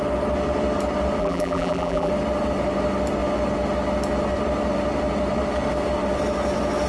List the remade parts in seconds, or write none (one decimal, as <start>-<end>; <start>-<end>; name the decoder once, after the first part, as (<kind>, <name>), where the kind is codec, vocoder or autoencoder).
1.2-2.1 (vocoder, BigVGAN v2)

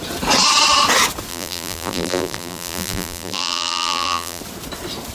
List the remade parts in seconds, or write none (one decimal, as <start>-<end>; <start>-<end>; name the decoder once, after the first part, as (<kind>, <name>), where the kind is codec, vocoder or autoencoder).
1.3-4.4 (vocoder, BigVGAN v2)

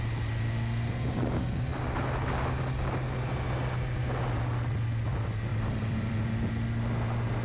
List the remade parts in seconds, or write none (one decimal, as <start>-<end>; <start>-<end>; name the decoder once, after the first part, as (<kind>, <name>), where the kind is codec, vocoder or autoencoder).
5.5-6.2 (vocoder, BigVGAN v2)

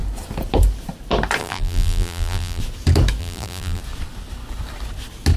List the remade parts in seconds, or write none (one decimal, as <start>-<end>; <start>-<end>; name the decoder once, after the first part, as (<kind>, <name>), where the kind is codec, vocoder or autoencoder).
1.4-2.6 (vocoder, BigVGAN v2); 3.2-3.8

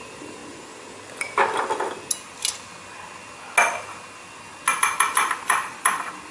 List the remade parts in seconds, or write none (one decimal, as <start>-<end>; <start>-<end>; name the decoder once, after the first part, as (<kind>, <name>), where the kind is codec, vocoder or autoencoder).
4.7-6.3 (vocoder, BigVGAN v2)

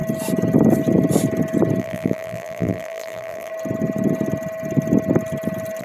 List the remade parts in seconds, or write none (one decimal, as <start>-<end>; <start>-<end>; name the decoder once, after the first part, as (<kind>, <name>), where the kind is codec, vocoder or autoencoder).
1.8-3.5 (vocoder, BigVGAN v2)

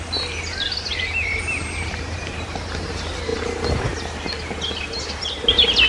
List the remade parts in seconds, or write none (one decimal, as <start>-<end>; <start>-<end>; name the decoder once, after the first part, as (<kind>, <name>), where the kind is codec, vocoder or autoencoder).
0.9-2.5 (vocoder, BigVGAN v2)

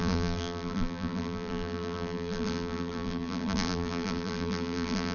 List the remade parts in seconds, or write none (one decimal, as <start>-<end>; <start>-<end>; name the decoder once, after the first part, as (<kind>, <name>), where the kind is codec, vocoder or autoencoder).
0.0-5.1 (vocoder, BigVGAN v2)